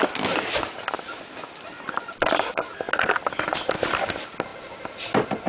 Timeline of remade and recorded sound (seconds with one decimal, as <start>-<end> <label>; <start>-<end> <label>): 0.0-5.5 recorded

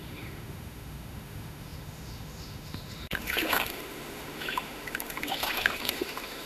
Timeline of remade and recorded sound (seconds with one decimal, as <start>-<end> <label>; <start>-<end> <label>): 0.0-6.5 remade

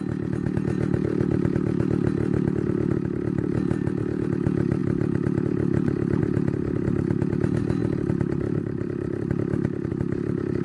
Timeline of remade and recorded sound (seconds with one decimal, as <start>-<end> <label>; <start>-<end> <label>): 0.0-10.6 recorded

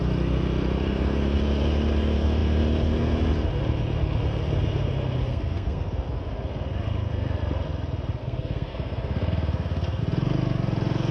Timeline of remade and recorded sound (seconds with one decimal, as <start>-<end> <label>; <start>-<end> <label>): 0.0-5.3 recorded; 5.3-5.9 remade; 5.9-8.2 recorded; 8.2-10.0 remade; 10.0-11.1 recorded

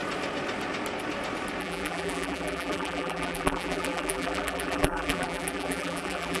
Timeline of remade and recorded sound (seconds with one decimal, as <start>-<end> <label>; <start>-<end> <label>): 0.0-1.6 recorded; 1.6-6.4 remade

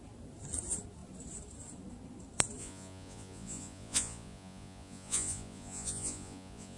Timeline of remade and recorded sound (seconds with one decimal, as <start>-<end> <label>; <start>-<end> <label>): 0.0-2.6 recorded; 2.6-6.8 remade

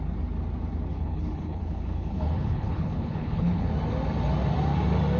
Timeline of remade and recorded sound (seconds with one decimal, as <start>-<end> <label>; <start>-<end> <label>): 0.0-0.9 recorded; 0.9-3.7 remade; 3.7-5.2 recorded

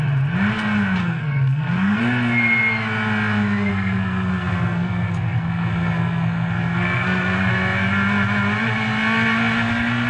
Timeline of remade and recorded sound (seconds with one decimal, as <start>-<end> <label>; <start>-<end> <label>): 0.0-1.0 recorded; 1.0-2.0 remade; 2.0-3.7 recorded; 3.7-7.5 remade; 7.5-10.1 recorded